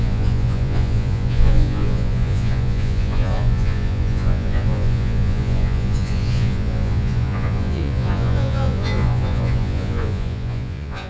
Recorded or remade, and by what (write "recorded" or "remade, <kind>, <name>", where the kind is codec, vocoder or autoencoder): remade, vocoder, Vocos